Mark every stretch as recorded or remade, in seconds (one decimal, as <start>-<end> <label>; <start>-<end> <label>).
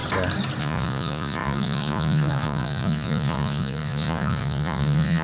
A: 0.0-0.6 recorded; 0.6-5.2 remade